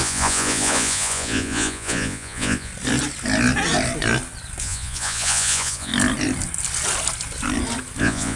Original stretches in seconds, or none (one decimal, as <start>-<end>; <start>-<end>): 2.7-4.6; 5.9-8.0